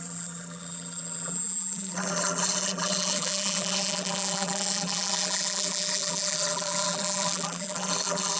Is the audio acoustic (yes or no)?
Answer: no